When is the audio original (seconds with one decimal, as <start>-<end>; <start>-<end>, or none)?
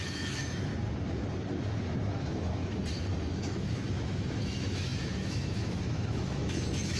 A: 0.7-2.1; 2.6-3.2